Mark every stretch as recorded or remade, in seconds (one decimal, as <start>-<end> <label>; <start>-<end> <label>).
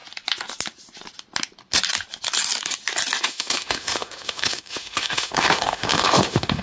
0.0-3.2 recorded; 3.2-6.6 remade